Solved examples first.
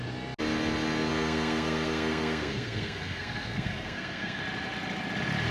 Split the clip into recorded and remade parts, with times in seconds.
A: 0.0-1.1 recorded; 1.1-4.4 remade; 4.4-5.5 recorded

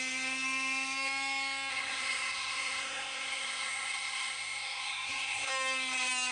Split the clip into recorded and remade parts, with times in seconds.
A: 0.0-1.7 recorded; 1.7-5.5 remade; 5.5-6.3 recorded

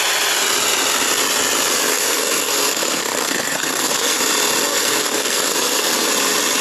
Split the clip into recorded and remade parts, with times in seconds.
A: 0.0-1.9 recorded; 1.9-4.2 remade; 4.2-4.7 recorded; 4.7-6.1 remade; 6.1-6.6 recorded

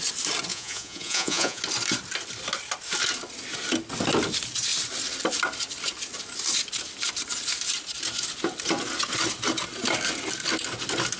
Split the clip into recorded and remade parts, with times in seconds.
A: 0.0-0.5 recorded; 0.5-1.6 remade; 1.6-11.2 recorded

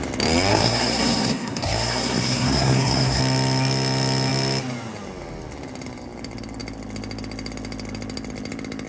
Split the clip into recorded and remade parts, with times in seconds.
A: 0.0-0.5 recorded; 0.5-3.2 remade; 3.2-8.9 recorded

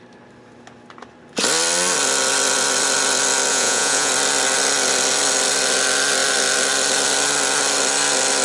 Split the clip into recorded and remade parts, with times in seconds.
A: 0.0-3.5 recorded; 3.5-4.1 remade; 4.1-8.4 recorded